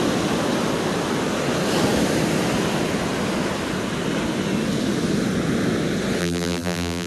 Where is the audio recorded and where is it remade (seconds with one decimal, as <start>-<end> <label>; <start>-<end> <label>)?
0.0-6.2 recorded; 6.2-7.1 remade